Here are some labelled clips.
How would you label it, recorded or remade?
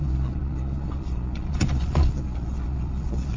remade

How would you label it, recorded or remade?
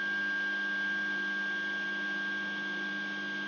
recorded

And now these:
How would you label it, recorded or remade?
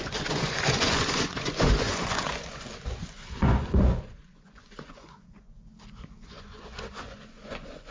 remade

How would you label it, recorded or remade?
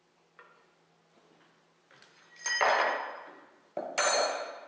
recorded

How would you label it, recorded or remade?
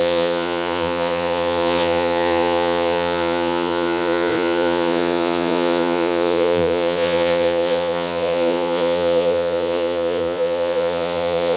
remade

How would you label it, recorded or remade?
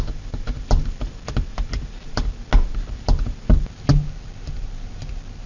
recorded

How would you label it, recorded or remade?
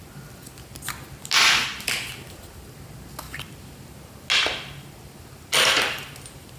recorded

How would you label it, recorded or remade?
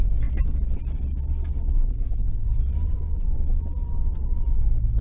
recorded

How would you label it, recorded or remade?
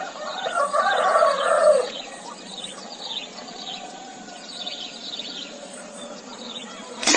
remade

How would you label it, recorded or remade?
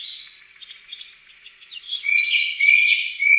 remade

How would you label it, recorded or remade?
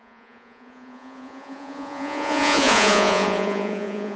remade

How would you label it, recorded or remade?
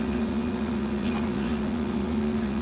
remade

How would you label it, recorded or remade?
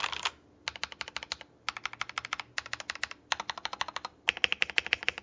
recorded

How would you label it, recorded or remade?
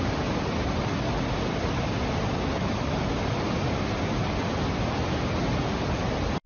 recorded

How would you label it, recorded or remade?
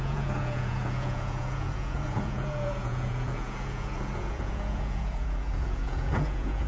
remade